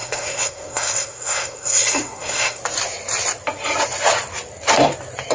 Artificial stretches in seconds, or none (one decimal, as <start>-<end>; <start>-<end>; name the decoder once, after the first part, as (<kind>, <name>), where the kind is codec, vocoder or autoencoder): 0.0-2.6 (codec, SNAC)